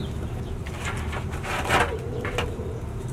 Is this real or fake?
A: real